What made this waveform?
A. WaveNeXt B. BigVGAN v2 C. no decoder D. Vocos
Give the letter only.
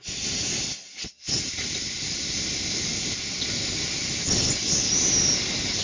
C